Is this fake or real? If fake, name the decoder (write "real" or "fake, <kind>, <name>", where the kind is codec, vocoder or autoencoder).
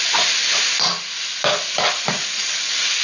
real